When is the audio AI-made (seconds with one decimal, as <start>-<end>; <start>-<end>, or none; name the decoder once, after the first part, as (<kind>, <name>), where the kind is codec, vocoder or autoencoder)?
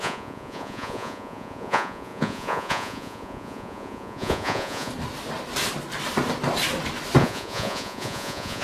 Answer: 0.0-4.9 (vocoder, Vocos); 7.2-8.6